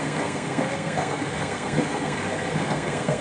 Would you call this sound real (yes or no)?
no